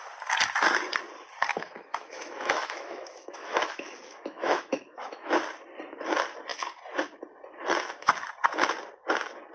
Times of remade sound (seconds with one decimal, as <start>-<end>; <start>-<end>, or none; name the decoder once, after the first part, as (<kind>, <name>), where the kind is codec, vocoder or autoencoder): 1.5-5.3 (autoencoder, DAC-VAE)